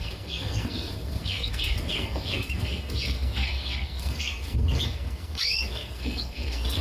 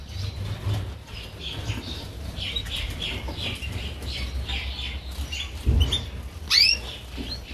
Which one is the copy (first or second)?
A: first